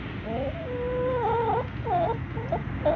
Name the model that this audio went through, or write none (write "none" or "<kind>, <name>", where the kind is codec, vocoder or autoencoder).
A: none